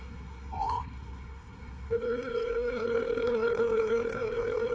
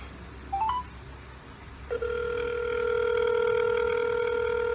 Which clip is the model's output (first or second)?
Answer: first